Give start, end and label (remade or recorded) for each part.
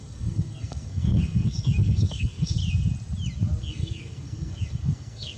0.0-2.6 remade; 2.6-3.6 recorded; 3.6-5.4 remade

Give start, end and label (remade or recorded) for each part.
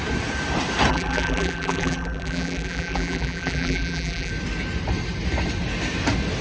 0.0-0.9 recorded; 0.9-4.3 remade; 4.3-6.4 recorded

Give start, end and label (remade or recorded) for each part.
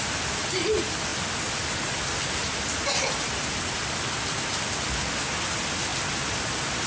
0.0-6.9 recorded